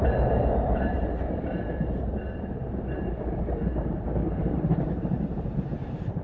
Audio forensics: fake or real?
fake